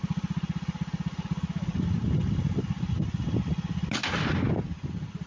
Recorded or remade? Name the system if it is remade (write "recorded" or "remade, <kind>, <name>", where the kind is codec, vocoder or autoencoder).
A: recorded